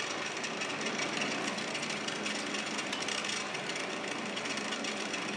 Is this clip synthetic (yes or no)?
no